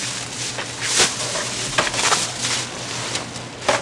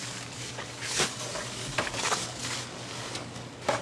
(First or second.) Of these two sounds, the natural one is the first